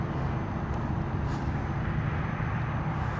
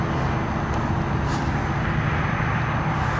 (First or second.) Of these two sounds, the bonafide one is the second